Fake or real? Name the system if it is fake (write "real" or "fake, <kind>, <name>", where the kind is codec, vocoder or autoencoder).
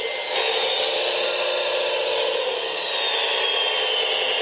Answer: real